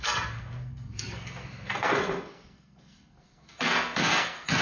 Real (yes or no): no